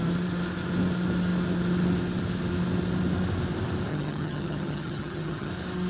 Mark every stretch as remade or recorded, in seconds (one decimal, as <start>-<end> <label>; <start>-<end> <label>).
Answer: 0.0-3.9 recorded; 3.9-5.5 remade; 5.5-5.9 recorded